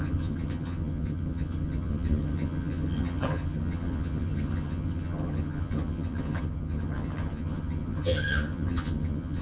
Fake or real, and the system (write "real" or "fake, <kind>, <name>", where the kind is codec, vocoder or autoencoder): fake, vocoder, HiFi-GAN